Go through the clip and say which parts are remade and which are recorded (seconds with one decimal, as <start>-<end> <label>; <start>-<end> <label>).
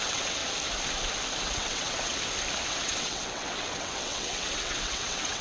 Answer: 0.0-0.4 remade; 0.4-1.4 recorded; 1.4-2.1 remade; 2.1-2.7 recorded; 2.7-5.4 remade